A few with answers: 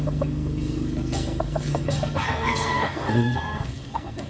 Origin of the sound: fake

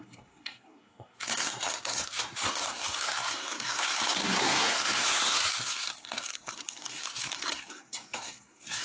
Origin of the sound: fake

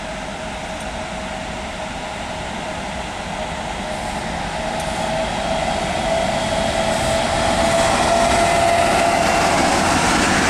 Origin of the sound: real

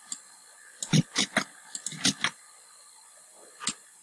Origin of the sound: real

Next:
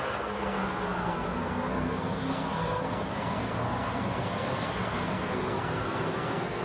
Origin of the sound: fake